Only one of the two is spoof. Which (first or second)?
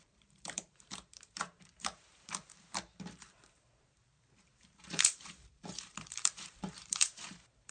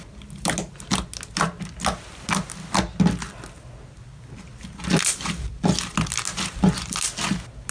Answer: first